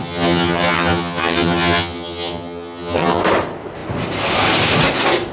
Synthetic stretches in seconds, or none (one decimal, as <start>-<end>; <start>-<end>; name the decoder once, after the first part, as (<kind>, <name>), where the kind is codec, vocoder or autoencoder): 0.0-3.2 (vocoder, HiFi-GAN)